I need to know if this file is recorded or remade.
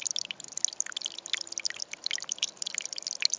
recorded